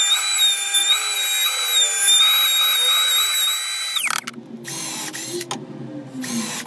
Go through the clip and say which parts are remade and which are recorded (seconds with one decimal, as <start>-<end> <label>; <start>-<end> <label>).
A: 0.0-6.7 recorded